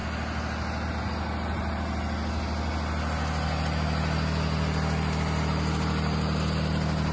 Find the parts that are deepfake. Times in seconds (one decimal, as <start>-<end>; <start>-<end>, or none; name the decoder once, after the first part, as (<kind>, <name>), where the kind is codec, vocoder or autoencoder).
none